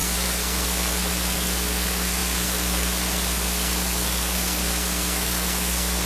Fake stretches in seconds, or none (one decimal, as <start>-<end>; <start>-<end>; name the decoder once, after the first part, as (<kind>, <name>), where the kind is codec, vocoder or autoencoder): 0.0-6.1 (codec, SNAC)